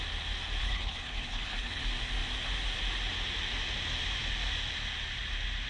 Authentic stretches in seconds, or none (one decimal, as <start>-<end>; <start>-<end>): 0.0-0.6; 1.8-5.7